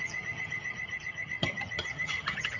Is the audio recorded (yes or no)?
no